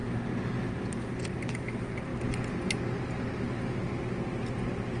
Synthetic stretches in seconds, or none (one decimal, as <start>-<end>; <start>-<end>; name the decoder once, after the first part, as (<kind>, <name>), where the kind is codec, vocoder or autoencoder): none